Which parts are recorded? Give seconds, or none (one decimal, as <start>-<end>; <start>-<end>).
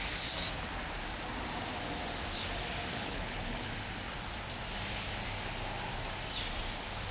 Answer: 0.0-2.9; 3.7-7.1